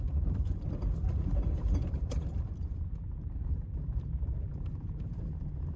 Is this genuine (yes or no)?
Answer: no